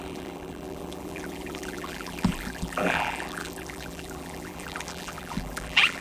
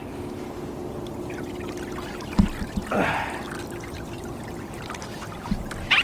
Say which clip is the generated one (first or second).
first